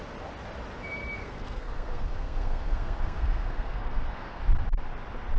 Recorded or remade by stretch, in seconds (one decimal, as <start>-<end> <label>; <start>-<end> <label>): 0.0-1.2 recorded; 1.2-4.4 remade; 4.4-5.4 recorded